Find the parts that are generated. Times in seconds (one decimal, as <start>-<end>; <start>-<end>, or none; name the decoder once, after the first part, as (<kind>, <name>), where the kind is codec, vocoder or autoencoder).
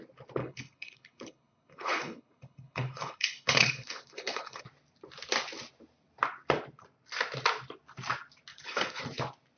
0.4-4.6 (codec, HILCodec); 8.5-9.0